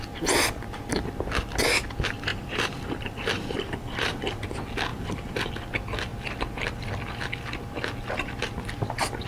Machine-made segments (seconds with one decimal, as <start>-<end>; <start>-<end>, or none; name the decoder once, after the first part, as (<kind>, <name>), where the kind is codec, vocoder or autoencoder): 2.3-4.4 (vocoder, BigVGAN v2); 4.9-5.5